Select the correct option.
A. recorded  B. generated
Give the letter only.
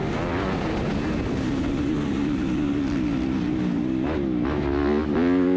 A